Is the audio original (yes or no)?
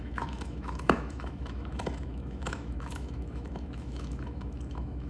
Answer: no